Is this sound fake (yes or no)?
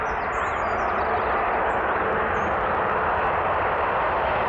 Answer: no